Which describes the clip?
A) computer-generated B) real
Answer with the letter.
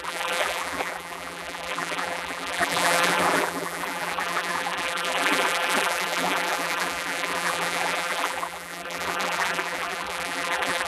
A